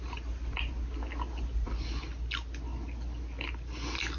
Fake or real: real